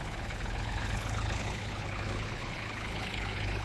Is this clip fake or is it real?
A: fake